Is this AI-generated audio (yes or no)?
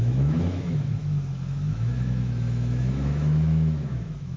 yes